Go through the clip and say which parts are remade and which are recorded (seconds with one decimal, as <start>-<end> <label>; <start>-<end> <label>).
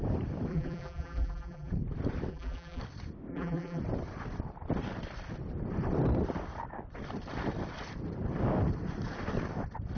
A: 0.0-0.5 recorded; 0.5-1.7 remade; 1.7-2.3 recorded; 2.3-2.8 remade; 2.8-3.3 recorded; 3.3-3.8 remade; 3.8-10.0 recorded